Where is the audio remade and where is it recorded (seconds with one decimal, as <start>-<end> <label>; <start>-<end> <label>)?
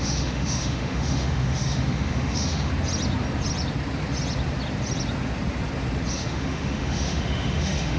0.0-2.7 remade; 2.7-6.1 recorded; 6.1-8.0 remade